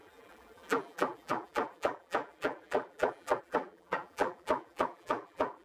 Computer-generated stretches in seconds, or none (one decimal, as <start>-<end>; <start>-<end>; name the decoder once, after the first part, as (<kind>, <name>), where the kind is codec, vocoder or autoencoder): 0.0-5.6 (vocoder, BigVGAN v2)

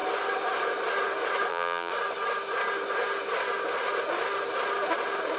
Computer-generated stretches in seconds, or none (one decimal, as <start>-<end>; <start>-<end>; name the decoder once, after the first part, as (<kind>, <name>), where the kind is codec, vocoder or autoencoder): 1.5-1.9 (vocoder, BigVGAN v2)

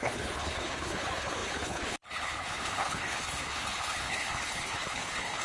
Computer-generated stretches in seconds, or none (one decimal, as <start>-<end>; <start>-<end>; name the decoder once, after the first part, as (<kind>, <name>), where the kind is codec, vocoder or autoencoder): 0.0-5.4 (codec, HILCodec)

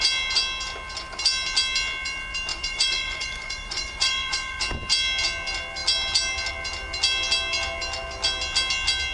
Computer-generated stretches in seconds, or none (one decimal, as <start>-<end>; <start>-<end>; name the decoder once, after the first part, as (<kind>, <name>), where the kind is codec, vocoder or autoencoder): 2.5-4.6 (vocoder, Vocos)

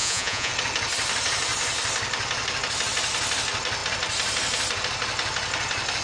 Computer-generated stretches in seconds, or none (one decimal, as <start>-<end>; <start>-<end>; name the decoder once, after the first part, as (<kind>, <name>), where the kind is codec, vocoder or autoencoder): 0.0-0.5 (vocoder, Vocos)

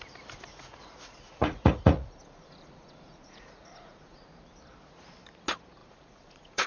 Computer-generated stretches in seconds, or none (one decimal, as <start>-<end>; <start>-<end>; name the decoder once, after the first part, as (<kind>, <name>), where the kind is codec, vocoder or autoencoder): 0.5-4.2 (vocoder, Vocos); 5.8-6.7

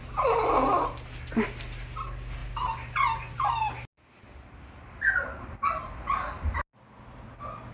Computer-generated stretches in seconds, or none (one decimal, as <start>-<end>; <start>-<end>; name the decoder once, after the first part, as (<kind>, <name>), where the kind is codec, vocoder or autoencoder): none

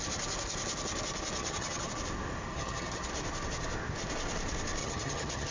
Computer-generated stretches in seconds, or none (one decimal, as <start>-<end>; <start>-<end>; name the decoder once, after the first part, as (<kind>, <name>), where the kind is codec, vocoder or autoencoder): 1.4-1.9 (vocoder, HiFi-GAN); 2.5-3.1; 4.8-5.5